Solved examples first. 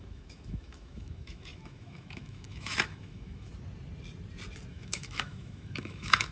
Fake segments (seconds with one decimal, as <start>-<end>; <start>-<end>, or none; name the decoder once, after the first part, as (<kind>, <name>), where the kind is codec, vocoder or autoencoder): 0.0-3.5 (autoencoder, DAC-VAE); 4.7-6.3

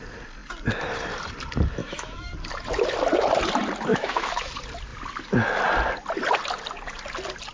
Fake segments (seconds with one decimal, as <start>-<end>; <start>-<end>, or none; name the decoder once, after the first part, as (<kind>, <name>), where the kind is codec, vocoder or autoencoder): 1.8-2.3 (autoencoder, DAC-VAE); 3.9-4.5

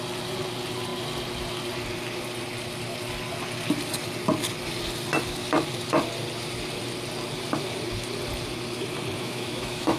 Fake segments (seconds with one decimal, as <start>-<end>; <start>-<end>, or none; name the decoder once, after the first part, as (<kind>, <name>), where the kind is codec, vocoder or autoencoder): 9.2-10.0 (autoencoder, DAC-VAE)

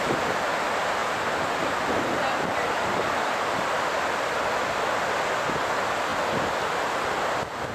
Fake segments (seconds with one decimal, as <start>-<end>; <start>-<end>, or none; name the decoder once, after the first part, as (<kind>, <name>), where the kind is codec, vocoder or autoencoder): none

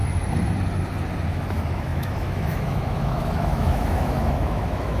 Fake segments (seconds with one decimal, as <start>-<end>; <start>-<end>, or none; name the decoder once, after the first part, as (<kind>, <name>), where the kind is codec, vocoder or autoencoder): 1.3-5.0 (autoencoder, DAC-VAE)

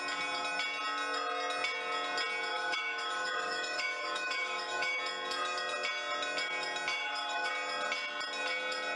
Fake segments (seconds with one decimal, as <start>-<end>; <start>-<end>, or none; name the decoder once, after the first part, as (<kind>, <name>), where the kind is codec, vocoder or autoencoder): 2.5-5.0 (autoencoder, DAC-VAE); 6.9-7.5